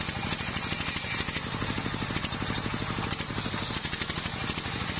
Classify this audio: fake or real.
real